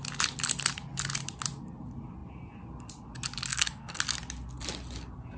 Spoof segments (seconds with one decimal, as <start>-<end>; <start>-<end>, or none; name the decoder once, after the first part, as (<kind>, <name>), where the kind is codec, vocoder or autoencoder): 3.5-4.0 (codec, SNAC)